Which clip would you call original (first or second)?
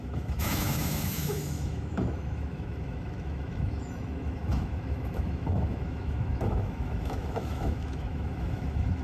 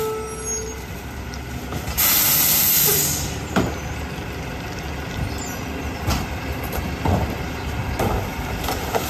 second